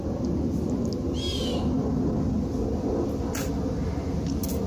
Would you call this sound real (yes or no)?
yes